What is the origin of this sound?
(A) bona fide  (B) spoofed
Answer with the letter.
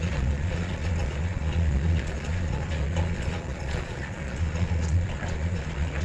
B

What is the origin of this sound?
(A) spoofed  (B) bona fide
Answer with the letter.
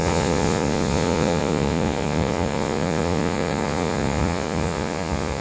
A